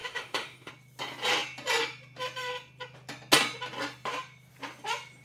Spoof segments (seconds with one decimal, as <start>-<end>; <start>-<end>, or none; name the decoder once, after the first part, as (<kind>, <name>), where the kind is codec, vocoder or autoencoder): 0.0-0.7 (autoencoder, DAC-VAE)